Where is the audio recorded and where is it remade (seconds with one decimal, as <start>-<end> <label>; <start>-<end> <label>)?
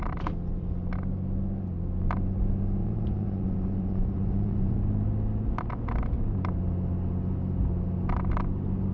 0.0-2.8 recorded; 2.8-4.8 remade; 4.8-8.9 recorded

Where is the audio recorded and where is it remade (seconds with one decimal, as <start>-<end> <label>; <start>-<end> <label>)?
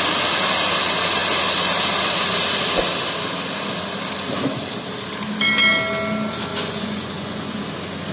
0.0-6.5 recorded; 6.5-7.6 remade; 7.6-8.1 recorded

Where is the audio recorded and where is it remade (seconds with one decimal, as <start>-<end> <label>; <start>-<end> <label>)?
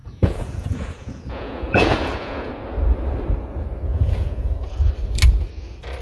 0.0-2.5 remade; 2.5-3.9 recorded; 3.9-4.5 remade; 4.5-6.0 recorded